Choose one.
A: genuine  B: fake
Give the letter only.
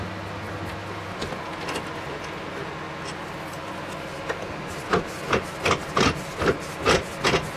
A